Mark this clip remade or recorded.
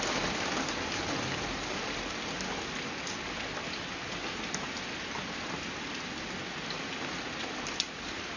recorded